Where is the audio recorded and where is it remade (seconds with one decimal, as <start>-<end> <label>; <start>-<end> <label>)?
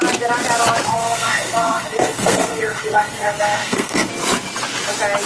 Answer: 0.0-0.9 recorded; 0.9-4.1 remade; 4.1-5.3 recorded